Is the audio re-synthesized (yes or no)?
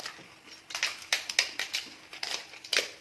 no